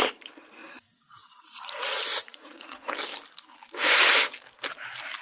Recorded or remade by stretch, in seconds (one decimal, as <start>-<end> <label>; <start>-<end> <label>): 0.0-0.6 recorded; 0.6-2.9 remade; 2.9-5.2 recorded